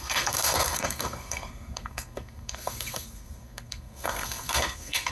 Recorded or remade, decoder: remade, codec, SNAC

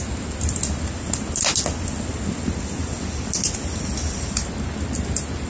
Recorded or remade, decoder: recorded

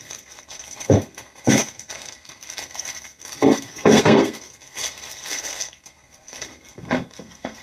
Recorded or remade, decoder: remade, codec, SNAC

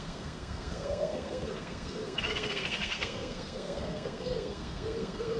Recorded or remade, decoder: remade, codec, SNAC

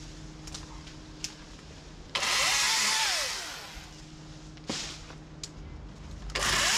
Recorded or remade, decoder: recorded